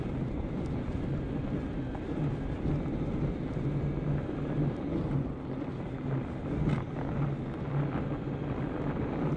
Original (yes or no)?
yes